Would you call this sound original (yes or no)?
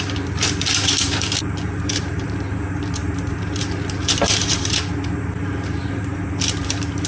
no